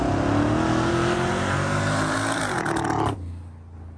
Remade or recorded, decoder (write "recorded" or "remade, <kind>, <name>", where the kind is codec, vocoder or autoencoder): recorded